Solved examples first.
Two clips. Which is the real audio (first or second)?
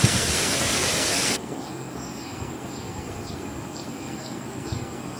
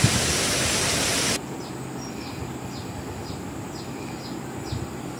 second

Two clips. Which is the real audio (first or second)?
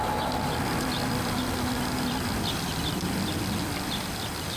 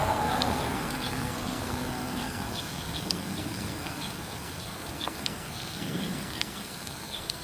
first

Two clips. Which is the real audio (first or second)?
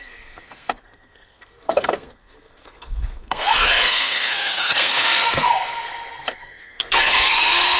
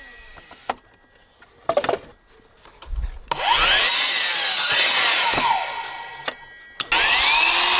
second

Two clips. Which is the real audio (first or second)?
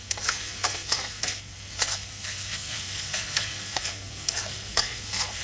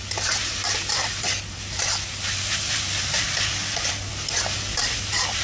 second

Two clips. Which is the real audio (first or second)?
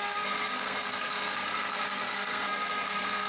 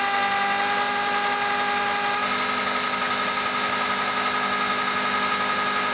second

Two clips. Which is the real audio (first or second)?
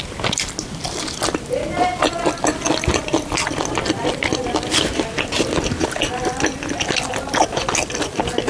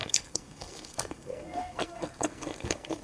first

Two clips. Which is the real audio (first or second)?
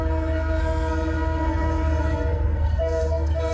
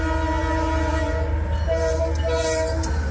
second